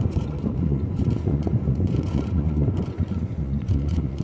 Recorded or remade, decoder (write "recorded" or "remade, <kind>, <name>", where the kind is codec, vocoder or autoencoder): remade, vocoder, Vocos